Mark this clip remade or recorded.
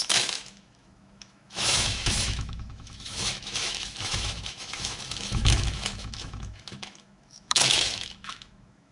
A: remade